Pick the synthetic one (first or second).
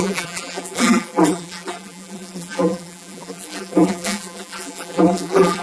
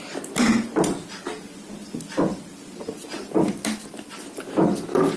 first